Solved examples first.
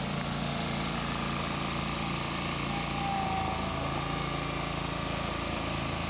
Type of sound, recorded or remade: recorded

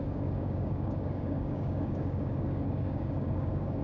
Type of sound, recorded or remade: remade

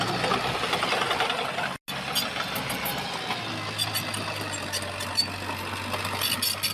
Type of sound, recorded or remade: recorded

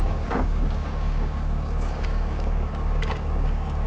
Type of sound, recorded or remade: remade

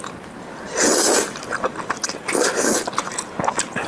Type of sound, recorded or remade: recorded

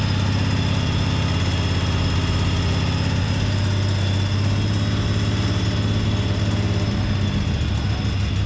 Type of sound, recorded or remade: recorded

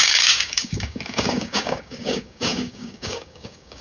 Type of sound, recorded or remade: remade